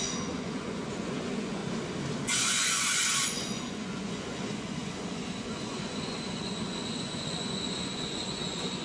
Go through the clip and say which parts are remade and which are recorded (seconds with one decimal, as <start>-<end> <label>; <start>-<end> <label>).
0.0-1.6 remade; 1.6-2.2 recorded; 2.2-8.8 remade